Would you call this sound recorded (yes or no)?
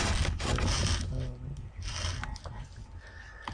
yes